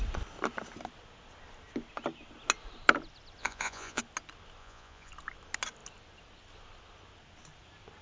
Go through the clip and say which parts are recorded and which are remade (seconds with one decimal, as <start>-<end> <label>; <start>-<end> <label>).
0.0-3.4 recorded; 3.4-4.0 remade; 4.0-4.6 recorded; 4.6-5.1 remade; 5.1-8.0 recorded